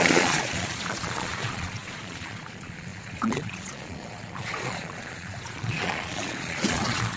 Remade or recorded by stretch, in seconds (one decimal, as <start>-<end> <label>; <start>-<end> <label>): 0.0-7.2 remade